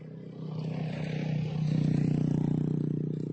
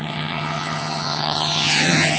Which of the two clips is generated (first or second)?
second